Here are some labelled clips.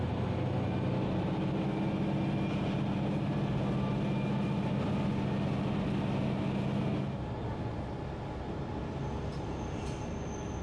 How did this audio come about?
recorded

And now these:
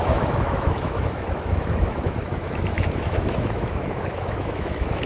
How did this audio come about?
remade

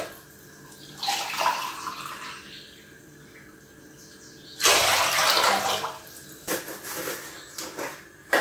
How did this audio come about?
recorded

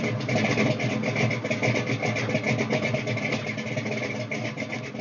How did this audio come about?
recorded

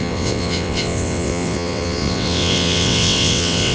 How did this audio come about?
remade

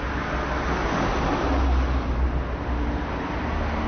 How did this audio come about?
recorded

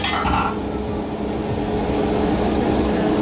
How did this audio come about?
recorded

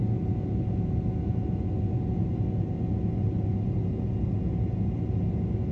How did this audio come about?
recorded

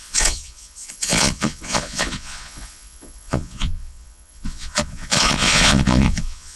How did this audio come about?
remade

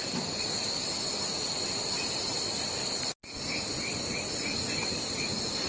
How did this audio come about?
recorded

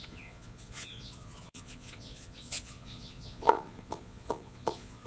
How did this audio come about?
remade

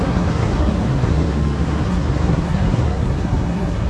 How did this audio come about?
remade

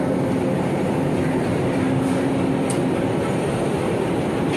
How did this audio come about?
recorded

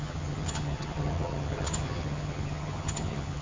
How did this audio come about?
remade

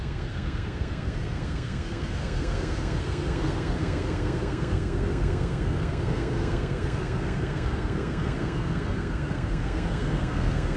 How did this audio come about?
remade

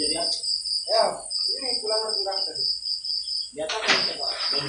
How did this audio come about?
recorded